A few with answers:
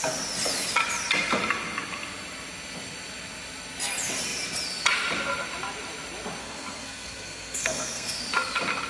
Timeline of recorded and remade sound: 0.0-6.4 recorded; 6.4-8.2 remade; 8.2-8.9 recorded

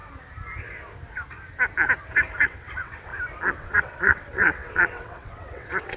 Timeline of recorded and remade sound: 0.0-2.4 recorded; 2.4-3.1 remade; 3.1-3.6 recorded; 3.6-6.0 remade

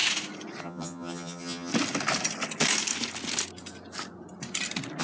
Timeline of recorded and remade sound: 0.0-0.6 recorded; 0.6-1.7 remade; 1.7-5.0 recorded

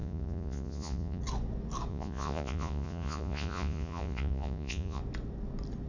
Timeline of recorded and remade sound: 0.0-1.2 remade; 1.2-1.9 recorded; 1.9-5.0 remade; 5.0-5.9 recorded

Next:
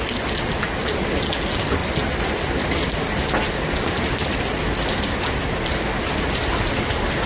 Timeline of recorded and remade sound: 0.0-7.3 recorded

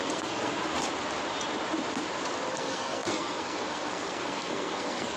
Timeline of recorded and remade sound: 0.0-0.6 remade; 0.6-2.5 recorded; 2.5-5.2 remade